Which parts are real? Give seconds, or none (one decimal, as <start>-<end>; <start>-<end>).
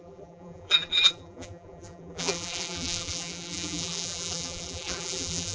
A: none